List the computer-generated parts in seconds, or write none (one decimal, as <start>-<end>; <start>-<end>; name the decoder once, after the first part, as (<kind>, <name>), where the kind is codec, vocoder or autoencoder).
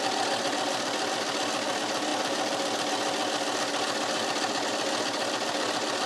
none